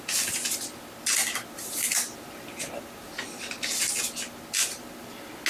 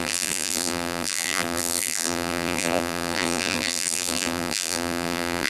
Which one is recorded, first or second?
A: first